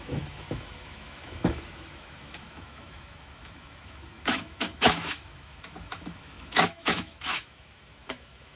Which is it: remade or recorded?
remade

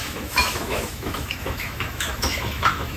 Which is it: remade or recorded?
remade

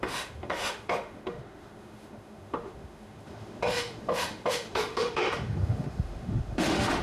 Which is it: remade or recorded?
remade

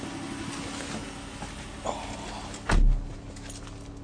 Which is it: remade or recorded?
recorded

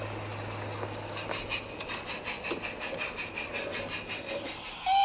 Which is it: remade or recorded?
recorded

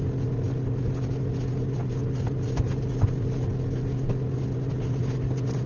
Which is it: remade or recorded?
recorded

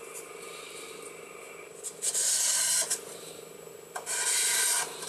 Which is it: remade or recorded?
recorded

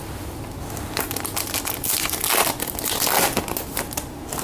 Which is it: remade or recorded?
recorded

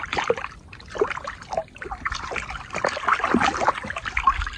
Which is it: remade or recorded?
recorded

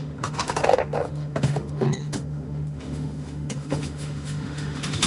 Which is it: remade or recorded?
remade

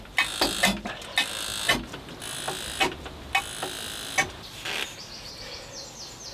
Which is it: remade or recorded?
recorded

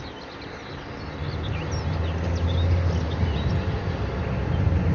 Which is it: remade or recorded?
recorded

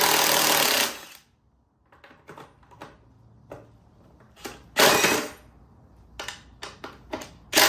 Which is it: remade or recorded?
recorded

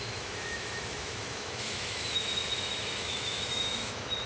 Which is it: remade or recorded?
remade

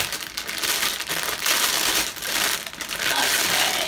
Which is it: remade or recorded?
recorded